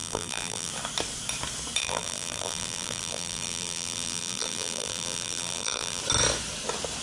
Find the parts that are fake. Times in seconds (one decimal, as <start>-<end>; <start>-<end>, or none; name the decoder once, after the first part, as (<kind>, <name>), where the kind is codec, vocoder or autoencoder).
0.0-0.7 (vocoder, BigVGAN v2); 1.8-6.0